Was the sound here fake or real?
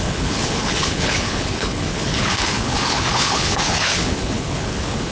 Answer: fake